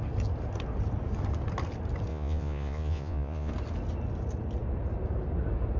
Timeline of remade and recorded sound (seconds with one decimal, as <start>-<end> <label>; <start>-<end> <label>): 0.0-2.1 recorded; 2.1-3.5 remade; 3.5-5.8 recorded